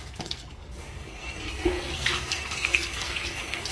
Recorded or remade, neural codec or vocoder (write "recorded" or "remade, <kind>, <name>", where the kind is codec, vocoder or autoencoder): remade, codec, SNAC